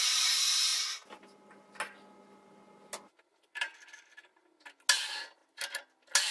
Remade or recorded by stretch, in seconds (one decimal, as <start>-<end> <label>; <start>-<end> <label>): 0.0-6.3 recorded